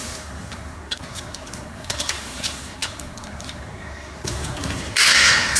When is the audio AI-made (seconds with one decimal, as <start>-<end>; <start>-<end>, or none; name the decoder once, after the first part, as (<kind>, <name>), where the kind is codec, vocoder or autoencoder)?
0.0-5.6 (codec, SNAC)